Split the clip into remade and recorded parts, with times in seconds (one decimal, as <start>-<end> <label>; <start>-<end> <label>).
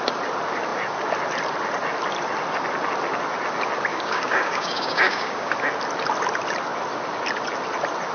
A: 0.0-3.9 recorded; 3.9-5.5 remade; 5.5-8.1 recorded